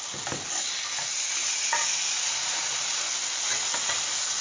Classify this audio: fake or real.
real